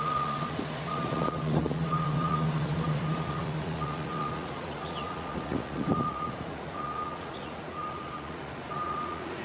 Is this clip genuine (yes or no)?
no